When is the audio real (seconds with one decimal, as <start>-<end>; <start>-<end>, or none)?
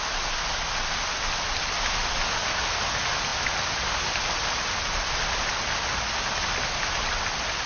0.0-7.7